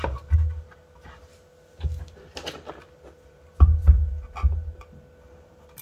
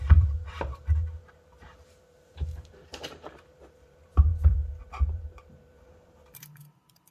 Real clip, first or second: first